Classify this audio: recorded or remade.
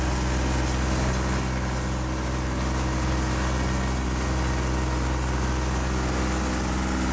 recorded